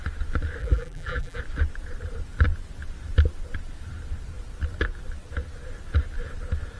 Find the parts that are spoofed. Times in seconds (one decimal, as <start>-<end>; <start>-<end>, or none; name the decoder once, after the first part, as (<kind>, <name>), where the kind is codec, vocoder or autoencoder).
0.6-1.4 (vocoder, BigVGAN v2)